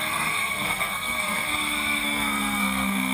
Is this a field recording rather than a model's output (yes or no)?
no